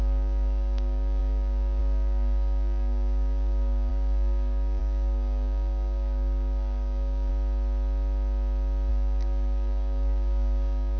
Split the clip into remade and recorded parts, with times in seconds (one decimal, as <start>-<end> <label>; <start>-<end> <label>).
0.0-7.3 remade; 7.3-8.9 recorded; 8.9-11.0 remade

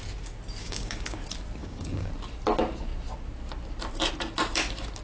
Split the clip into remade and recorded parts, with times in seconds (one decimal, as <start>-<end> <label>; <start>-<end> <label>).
0.0-0.6 recorded; 0.6-1.2 remade; 1.2-1.6 recorded; 1.6-2.1 remade; 2.1-5.0 recorded

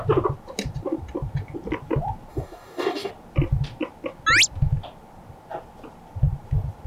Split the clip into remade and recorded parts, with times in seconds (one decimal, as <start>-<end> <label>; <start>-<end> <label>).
0.0-2.3 recorded; 2.3-3.1 remade; 3.1-6.9 recorded

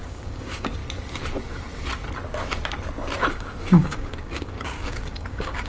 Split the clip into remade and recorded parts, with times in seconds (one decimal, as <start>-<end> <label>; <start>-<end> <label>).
0.0-0.8 remade; 0.8-3.3 recorded; 3.3-5.7 remade